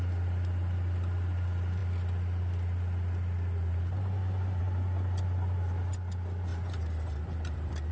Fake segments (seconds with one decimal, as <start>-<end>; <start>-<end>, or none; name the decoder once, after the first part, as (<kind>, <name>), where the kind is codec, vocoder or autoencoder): 6.5-7.9 (vocoder, BigVGAN v2)

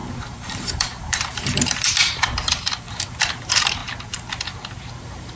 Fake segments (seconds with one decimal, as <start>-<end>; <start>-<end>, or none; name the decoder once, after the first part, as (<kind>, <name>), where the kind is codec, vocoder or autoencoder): 0.0-3.8 (vocoder, BigVGAN v2); 5.0-5.4

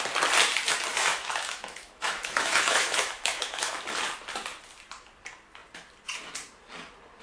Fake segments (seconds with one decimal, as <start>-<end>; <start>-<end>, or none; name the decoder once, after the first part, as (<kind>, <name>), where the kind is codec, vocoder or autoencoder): 0.9-3.8 (autoencoder, DAC-VAE)

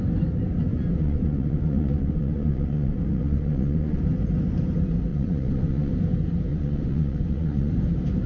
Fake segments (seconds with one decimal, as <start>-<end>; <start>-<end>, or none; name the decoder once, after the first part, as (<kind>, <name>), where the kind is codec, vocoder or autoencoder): 0.7-4.0 (vocoder, Vocos); 5.1-5.9; 6.5-7.7

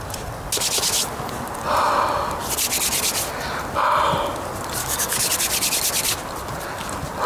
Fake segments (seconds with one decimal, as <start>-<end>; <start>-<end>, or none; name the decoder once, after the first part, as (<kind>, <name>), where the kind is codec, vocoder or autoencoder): 4.8-5.3 (codec, DAC)

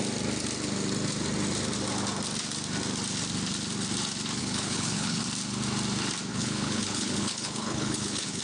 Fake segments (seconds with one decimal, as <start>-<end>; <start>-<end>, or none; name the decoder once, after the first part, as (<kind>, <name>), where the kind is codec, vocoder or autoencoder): 4.4-5.2 (codec, HILCodec); 6.3-8.4

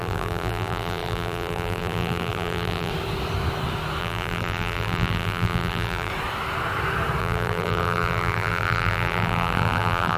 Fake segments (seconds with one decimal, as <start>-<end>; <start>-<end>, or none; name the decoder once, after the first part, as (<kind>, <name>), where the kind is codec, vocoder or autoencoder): 0.0-2.9 (vocoder, BigVGAN v2); 4.0-6.1; 7.2-10.2